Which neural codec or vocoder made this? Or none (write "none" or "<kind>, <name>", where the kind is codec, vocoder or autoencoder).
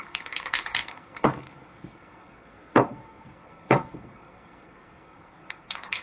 codec, SNAC